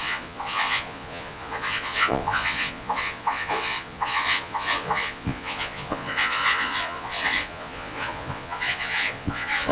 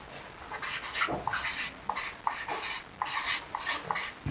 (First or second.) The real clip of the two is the second